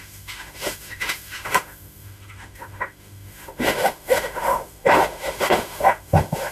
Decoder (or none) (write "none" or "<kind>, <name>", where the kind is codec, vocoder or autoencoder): autoencoder, DAC-VAE